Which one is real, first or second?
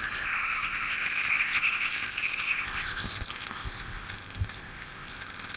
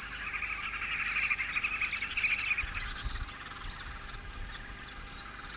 second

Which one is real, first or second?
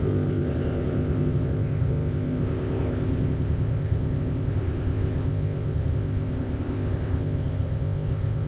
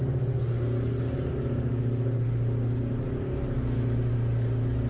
second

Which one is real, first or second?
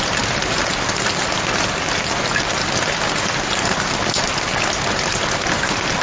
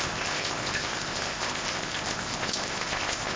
first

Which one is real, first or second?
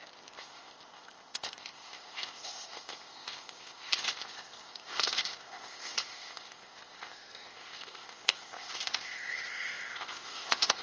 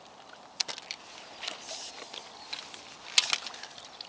second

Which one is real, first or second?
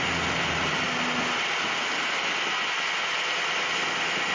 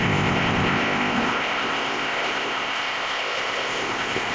first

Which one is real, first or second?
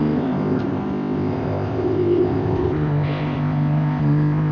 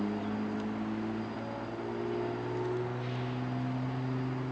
second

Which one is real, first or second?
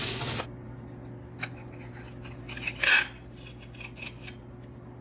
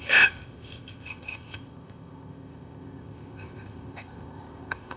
first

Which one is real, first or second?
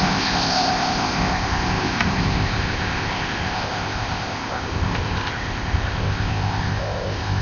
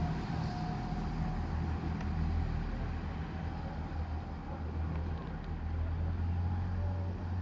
second